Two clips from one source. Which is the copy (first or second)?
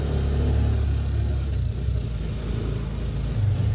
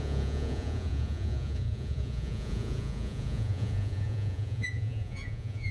second